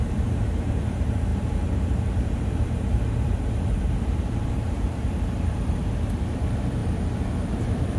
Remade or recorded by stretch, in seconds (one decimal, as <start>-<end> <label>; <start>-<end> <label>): 0.0-6.8 remade; 6.8-7.5 recorded; 7.5-8.0 remade

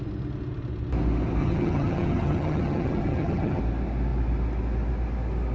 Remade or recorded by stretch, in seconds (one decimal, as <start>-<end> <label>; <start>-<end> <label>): 0.0-1.4 recorded; 1.4-3.6 remade; 3.6-5.5 recorded

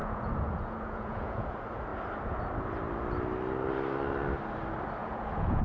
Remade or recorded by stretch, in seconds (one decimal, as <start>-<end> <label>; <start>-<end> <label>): 0.0-1.5 remade; 1.5-5.0 recorded; 5.0-5.6 remade